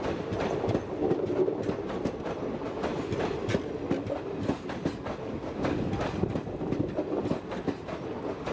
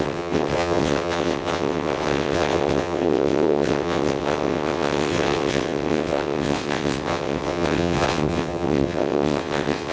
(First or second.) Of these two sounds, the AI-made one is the second